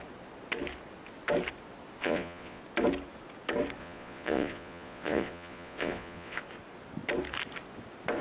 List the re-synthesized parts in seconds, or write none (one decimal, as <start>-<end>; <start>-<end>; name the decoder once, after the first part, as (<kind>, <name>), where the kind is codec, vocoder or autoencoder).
2.0-2.6 (vocoder, Vocos); 3.8-6.4